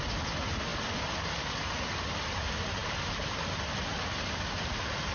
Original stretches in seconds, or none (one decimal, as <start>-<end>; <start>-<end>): 0.0-5.1